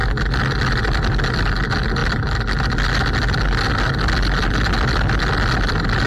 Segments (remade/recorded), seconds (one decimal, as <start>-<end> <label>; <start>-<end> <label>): 0.0-6.1 recorded